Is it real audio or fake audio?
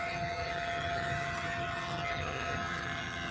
fake